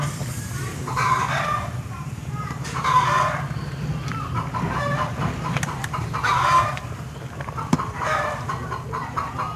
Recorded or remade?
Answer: remade